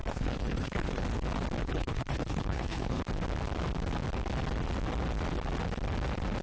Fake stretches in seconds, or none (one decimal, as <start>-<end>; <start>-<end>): 0.0-1.0; 1.6-3.0